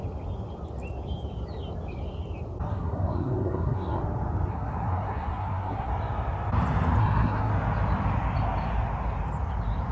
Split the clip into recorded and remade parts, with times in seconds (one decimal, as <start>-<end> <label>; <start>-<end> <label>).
0.0-2.7 recorded; 2.7-4.0 remade; 4.0-4.5 recorded; 4.5-5.9 remade; 5.9-7.0 recorded; 7.0-7.5 remade; 7.5-9.9 recorded